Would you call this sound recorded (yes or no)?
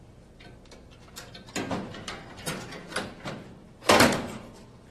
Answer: no